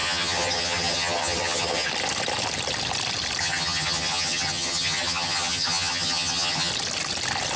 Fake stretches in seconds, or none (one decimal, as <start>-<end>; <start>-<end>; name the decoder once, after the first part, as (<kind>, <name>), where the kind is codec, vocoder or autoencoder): 0.0-1.9 (vocoder, HiFi-GAN); 3.4-6.7